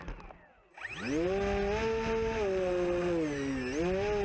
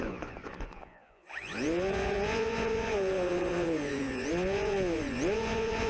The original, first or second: first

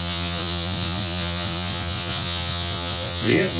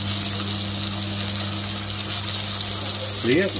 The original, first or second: second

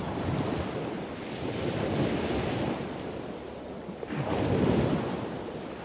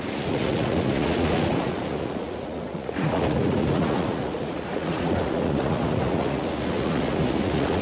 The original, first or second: first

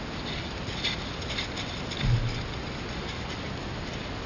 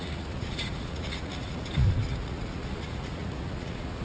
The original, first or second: first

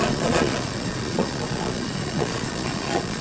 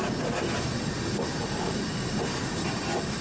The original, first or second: second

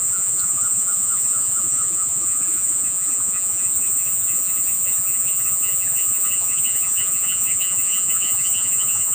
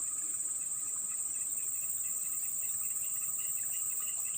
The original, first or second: second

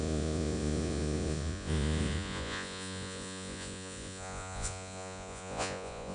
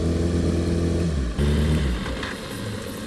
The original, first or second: second